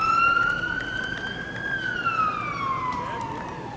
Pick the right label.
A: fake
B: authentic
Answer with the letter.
B